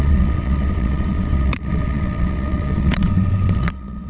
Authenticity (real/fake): fake